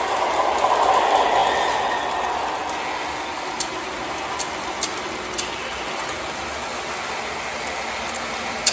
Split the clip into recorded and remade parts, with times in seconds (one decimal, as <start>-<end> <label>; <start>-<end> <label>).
0.0-8.7 recorded